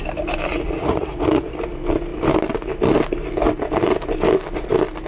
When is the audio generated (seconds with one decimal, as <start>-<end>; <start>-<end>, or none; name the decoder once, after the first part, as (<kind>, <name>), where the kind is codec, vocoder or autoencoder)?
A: 0.5-1.4 (vocoder, Vocos)